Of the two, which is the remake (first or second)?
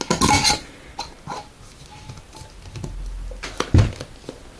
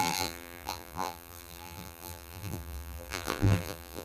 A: second